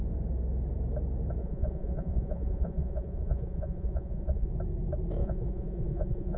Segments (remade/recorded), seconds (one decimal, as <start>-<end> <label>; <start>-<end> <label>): 0.0-1.4 recorded; 1.4-4.5 remade; 4.5-5.2 recorded; 5.2-6.4 remade